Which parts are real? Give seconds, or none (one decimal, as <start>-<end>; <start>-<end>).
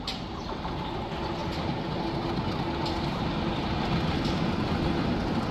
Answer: 0.0-5.5